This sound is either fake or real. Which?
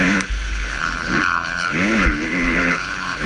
fake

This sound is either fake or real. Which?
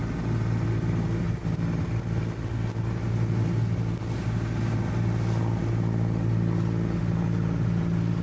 real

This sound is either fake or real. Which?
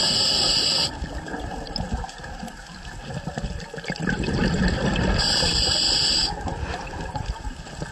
fake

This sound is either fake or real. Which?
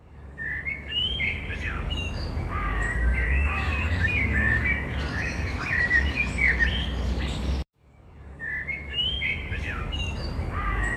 fake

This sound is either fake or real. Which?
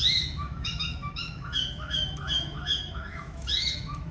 fake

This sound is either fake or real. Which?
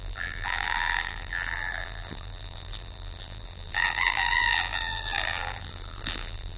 fake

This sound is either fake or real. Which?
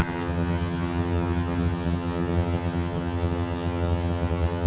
fake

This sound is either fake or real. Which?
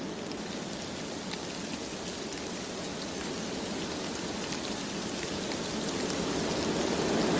real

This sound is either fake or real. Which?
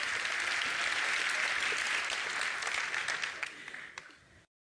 real